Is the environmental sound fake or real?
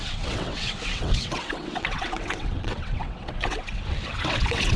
fake